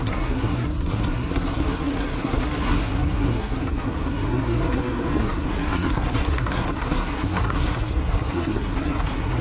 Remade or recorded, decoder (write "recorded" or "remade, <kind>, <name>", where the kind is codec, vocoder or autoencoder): remade, codec, SNAC